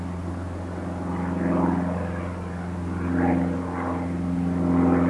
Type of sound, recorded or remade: recorded